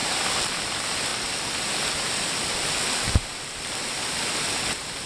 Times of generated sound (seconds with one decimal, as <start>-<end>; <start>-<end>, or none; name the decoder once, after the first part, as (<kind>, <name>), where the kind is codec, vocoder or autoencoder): 0.0-0.6 (vocoder, BigVGAN v2)